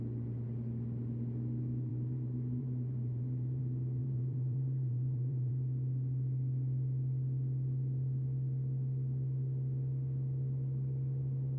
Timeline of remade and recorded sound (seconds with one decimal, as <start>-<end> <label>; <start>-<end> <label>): 0.0-1.9 recorded; 1.9-3.6 remade; 3.6-4.0 recorded; 4.0-5.5 remade; 5.5-11.6 recorded